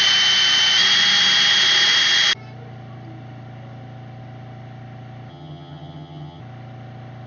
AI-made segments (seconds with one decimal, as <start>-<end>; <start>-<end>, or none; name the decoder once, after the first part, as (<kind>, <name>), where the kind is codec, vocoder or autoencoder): 5.3-6.4 (vocoder, HiFi-GAN)